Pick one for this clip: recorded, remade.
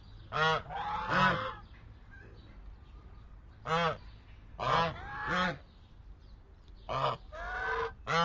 recorded